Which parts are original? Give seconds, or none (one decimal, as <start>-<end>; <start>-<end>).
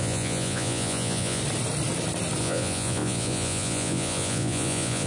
1.4-2.4